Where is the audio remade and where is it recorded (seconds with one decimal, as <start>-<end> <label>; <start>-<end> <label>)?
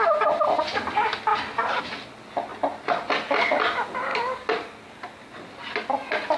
0.0-6.4 recorded